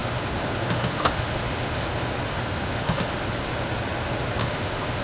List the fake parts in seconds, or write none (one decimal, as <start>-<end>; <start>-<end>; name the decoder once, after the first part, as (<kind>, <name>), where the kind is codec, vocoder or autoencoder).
0.0-1.8 (autoencoder, DAC-VAE); 2.3-3.1; 4.4-5.0